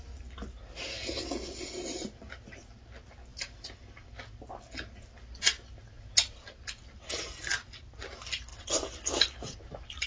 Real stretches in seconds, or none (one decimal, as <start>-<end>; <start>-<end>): 0.0-10.1